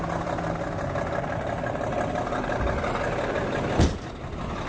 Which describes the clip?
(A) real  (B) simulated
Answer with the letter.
A